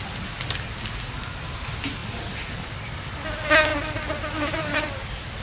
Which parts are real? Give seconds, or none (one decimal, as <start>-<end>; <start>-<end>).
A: 0.0-5.4